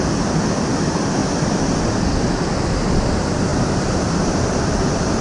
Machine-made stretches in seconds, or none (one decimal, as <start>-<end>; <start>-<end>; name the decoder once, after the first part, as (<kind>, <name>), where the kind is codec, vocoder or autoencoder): none